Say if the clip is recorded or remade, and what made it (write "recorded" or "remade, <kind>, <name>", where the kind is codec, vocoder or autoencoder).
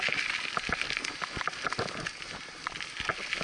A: recorded